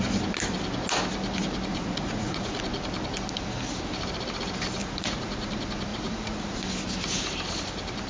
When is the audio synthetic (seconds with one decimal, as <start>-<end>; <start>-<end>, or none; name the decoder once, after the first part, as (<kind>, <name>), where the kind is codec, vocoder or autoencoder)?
1.7-2.6 (vocoder, Vocos); 4.8-5.5; 5.9-6.6